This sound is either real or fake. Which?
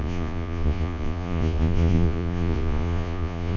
fake